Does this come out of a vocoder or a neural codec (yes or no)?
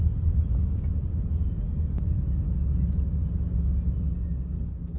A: no